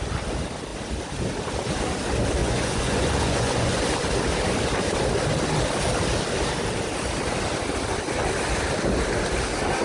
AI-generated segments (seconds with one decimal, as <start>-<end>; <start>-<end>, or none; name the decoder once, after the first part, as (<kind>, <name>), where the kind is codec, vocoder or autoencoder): 2.4-3.8 (vocoder, Vocos)

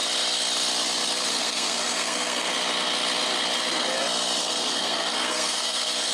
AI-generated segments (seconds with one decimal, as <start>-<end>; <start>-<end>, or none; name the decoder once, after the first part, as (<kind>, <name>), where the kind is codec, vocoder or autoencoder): 1.3-2.5 (codec, SNAC); 4.4-6.1

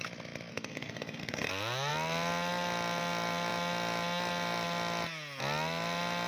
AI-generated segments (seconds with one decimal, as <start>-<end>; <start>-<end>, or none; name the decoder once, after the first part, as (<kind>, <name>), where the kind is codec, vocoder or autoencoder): 0.5-1.5 (codec, SNAC)

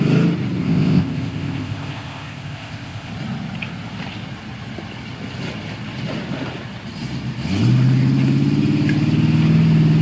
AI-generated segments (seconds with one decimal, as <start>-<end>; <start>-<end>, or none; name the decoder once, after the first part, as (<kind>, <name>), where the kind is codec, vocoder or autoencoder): 0.6-3.1 (codec, ZipCodec)